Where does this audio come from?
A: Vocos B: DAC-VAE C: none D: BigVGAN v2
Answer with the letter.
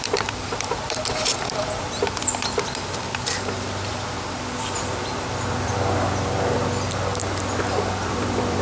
D